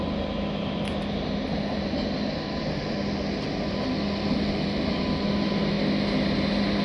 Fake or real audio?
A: real